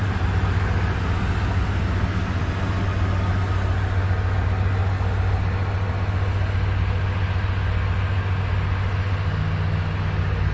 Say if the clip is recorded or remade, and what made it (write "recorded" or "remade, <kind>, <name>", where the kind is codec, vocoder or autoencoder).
recorded